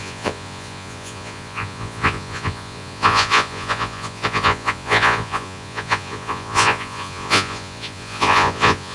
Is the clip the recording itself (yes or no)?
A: no